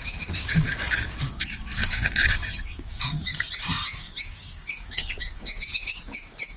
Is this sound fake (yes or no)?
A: yes